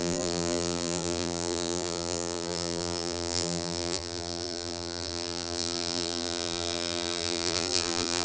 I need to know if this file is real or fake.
fake